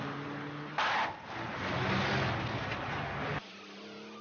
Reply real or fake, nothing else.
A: real